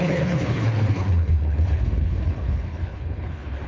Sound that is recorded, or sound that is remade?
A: remade